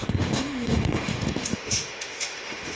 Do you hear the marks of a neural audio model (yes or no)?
yes